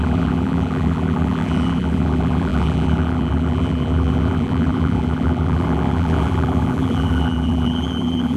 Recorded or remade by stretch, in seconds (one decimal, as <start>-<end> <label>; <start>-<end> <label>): 0.0-8.4 remade